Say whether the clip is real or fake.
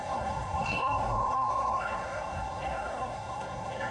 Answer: fake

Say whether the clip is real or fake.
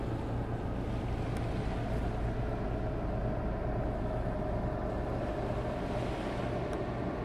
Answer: real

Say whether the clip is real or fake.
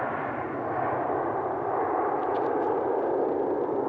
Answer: real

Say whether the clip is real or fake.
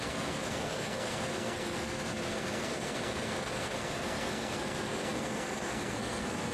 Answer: fake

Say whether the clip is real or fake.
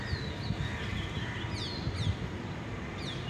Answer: real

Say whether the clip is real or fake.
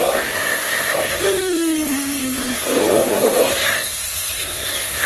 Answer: fake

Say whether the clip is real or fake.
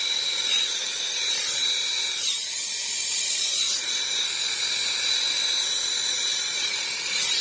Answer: real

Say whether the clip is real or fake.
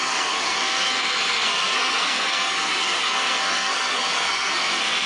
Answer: fake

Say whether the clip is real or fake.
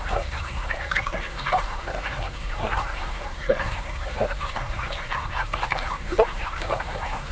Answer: fake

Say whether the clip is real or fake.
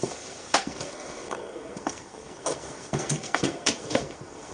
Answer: fake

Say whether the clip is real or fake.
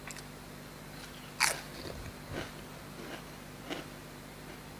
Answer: real